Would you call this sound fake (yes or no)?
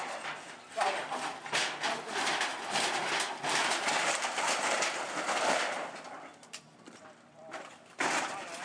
no